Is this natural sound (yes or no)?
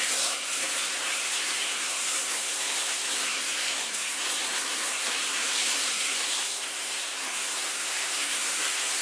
no